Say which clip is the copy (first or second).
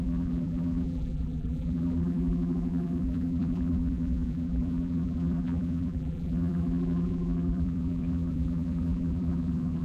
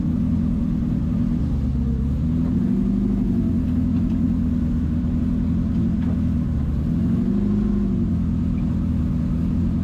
first